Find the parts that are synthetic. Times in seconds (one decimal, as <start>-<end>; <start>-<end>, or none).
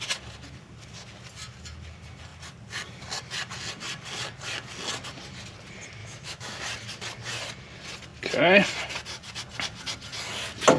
6.0-6.6